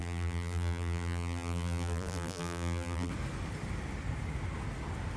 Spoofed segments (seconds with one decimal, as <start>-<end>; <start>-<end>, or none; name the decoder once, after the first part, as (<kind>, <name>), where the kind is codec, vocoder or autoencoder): 0.0-3.1 (vocoder, BigVGAN v2)